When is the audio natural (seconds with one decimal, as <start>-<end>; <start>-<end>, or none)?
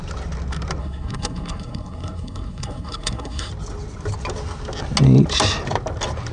0.0-0.8; 3.5-6.3